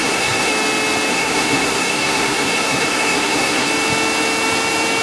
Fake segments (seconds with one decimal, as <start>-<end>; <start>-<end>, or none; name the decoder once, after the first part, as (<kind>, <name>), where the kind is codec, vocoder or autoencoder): 0.0-0.5 (codec, SNAC); 1.1-3.7